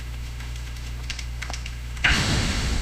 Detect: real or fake fake